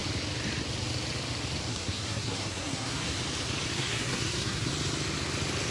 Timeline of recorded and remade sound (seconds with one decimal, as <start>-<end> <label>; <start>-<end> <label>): 0.0-1.7 recorded; 1.7-3.2 remade; 3.2-3.7 recorded; 3.7-4.7 remade; 4.7-5.7 recorded